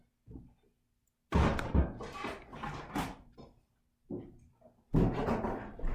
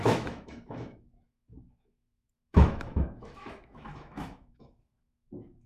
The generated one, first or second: second